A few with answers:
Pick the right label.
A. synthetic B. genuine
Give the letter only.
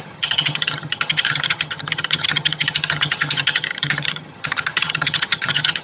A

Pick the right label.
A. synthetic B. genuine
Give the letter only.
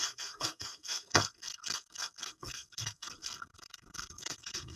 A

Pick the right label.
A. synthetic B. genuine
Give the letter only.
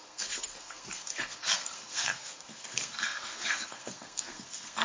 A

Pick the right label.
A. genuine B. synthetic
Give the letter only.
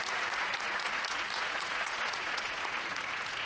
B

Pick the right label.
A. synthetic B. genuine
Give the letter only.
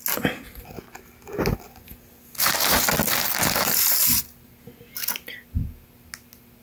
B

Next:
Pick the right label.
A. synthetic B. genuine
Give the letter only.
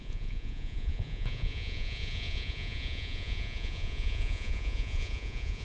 A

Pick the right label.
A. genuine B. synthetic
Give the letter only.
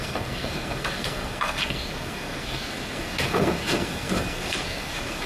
B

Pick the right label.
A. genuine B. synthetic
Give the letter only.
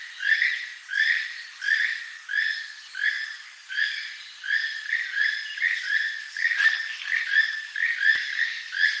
A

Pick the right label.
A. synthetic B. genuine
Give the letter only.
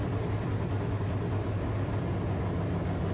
B